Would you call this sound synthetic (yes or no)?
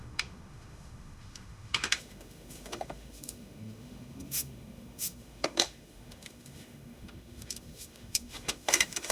yes